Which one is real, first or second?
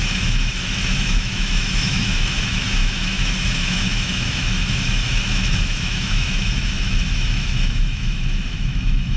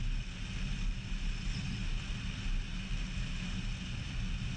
second